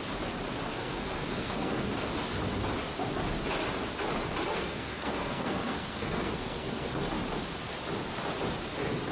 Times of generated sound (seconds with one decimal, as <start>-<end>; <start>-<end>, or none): 0.7-2.1; 4.5-6.9